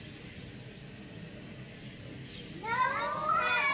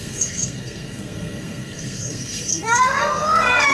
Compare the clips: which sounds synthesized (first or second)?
second